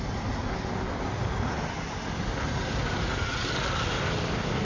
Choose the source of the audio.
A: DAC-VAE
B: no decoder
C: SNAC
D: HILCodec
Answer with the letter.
B